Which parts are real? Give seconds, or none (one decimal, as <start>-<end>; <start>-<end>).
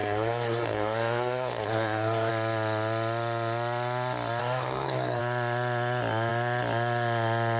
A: 2.3-4.4; 5.2-7.6